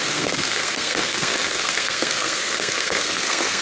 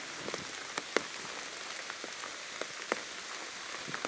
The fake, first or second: first